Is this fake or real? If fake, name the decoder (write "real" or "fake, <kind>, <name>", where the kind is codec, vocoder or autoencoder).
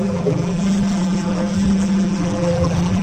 fake, vocoder, BigVGAN v2